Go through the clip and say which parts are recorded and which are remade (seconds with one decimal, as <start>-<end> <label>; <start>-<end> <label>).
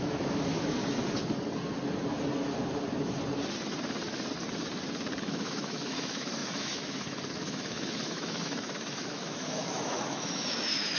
0.0-0.8 remade; 0.8-5.2 recorded; 5.2-11.0 remade